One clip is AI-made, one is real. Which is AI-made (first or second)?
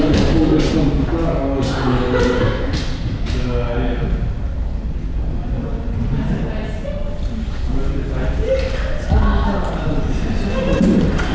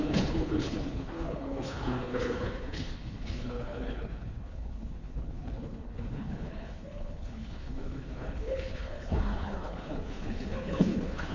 second